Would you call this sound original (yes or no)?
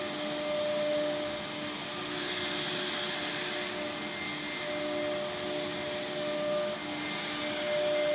yes